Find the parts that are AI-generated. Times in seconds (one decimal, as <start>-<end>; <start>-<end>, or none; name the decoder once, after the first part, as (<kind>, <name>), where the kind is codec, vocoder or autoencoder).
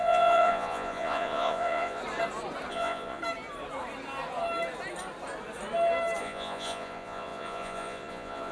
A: 0.0-2.0 (vocoder, Vocos); 2.7-3.2; 6.2-8.5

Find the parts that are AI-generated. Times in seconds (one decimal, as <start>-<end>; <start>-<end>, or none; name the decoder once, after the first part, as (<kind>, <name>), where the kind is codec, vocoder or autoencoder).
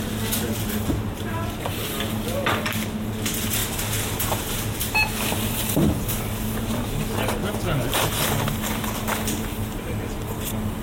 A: none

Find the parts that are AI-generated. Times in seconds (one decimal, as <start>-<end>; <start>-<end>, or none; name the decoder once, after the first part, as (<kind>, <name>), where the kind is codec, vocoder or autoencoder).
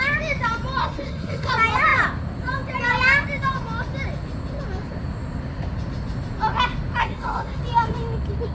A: 0.8-1.5 (codec, SNAC); 7.0-7.6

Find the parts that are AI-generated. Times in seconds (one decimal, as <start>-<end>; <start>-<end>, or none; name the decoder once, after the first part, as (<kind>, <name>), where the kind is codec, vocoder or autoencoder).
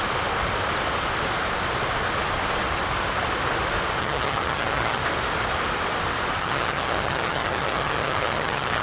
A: 4.0-5.0 (vocoder, HiFi-GAN); 6.4-8.8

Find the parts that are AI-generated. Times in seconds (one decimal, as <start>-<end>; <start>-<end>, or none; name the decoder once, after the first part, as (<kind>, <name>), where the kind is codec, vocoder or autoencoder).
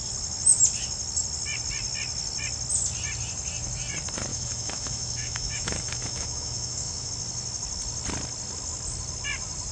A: 4.3-7.1 (autoencoder, DAC-VAE)